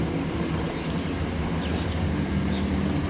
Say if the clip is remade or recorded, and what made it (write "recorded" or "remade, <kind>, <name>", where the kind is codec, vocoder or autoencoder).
recorded